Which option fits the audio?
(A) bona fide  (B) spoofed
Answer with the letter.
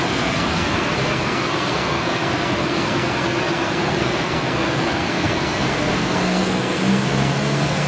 B